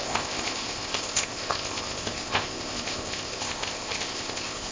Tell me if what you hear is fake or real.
fake